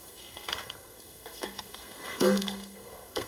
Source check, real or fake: fake